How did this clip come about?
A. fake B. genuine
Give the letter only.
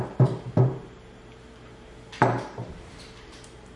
A